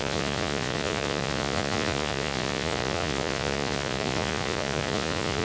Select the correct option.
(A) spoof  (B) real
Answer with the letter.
A